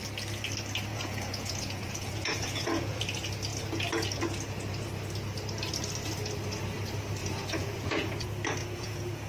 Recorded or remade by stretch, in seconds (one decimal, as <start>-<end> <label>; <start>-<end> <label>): 0.0-0.9 recorded; 0.9-3.0 remade; 3.0-7.2 recorded; 7.2-8.1 remade; 8.1-8.6 recorded; 8.6-9.3 remade